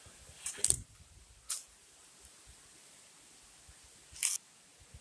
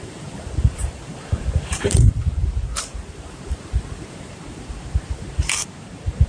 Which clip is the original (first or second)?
first